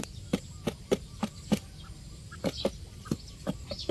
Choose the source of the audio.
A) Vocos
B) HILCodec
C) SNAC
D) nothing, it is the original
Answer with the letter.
D